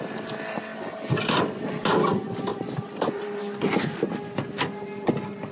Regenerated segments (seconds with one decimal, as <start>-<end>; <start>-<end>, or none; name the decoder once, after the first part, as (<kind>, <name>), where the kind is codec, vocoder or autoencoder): 2.5-3.4 (vocoder, BigVGAN v2)